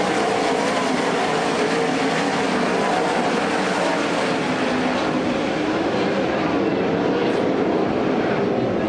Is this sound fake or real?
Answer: fake